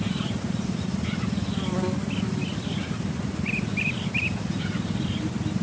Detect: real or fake real